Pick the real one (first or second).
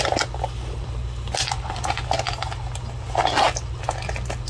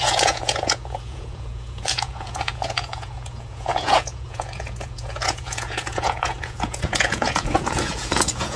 first